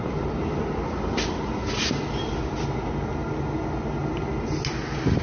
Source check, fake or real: real